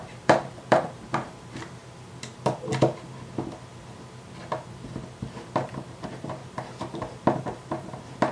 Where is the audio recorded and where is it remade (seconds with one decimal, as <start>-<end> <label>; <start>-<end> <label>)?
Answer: 0.0-1.8 remade; 1.8-5.2 recorded; 5.2-8.3 remade